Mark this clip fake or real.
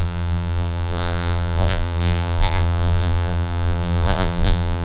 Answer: fake